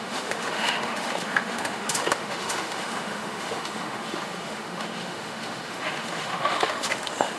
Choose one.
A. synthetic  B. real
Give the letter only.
A